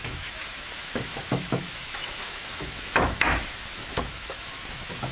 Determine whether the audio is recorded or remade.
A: remade